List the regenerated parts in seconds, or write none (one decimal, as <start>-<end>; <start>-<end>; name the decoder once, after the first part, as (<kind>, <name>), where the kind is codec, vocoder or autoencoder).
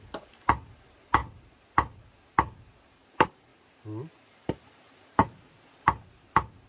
0.0-1.2 (vocoder, BigVGAN v2); 2.9-3.5; 4.1-5.2